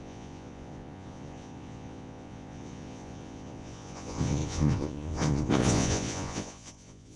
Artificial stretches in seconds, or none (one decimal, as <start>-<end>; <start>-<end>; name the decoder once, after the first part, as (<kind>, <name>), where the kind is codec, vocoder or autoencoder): 0.0-7.2 (vocoder, Vocos)